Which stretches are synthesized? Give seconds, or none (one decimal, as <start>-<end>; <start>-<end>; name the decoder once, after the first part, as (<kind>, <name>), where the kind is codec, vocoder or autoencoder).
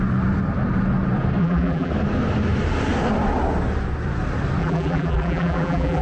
1.4-1.9 (vocoder, BigVGAN v2); 4.6-6.0